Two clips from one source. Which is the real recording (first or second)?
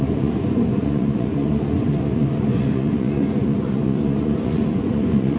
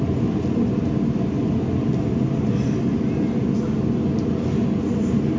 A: second